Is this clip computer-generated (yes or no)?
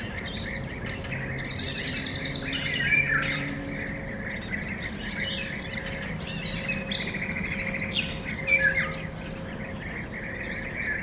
no